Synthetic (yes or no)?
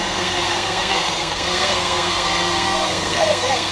yes